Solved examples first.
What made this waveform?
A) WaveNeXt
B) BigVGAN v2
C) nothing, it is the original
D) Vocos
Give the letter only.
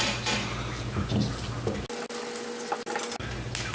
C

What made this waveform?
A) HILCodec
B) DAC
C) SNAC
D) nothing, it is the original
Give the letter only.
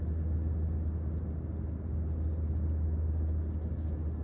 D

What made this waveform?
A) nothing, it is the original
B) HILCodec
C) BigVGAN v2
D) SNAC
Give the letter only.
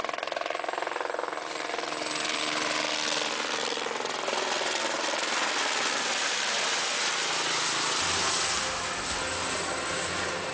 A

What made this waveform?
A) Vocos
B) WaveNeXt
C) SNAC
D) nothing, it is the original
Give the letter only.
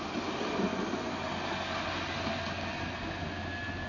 D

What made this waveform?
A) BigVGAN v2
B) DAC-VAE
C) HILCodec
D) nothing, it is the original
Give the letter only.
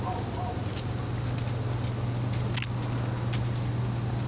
D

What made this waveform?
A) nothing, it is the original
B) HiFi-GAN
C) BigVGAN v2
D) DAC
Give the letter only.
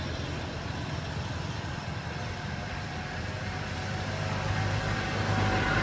A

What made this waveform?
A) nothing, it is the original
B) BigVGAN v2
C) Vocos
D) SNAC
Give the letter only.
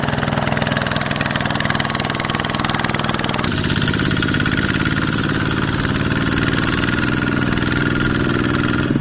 A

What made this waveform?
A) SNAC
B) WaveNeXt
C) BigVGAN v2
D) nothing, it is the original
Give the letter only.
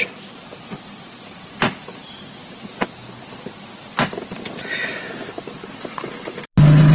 D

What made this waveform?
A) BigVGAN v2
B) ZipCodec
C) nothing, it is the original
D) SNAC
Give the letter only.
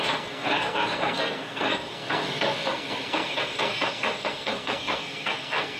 D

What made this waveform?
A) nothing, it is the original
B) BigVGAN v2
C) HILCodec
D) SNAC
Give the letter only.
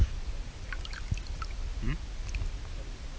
A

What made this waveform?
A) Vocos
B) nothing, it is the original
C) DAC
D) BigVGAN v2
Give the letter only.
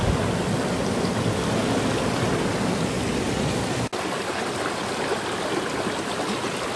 B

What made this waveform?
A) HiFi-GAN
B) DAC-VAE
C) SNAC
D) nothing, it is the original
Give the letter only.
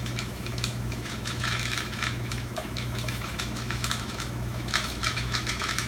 B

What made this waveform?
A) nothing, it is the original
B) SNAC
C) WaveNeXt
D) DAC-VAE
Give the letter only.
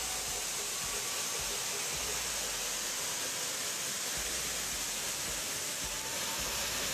A